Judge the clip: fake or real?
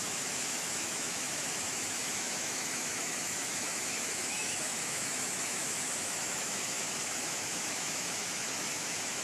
fake